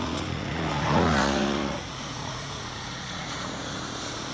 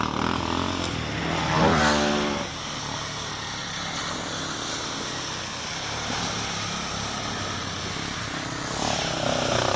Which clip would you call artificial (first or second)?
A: first